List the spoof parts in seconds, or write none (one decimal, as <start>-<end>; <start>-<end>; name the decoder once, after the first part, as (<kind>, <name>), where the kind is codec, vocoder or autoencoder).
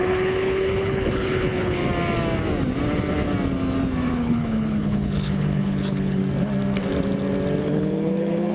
0.0-1.8 (codec, HILCodec); 4.1-6.2; 7.6-8.5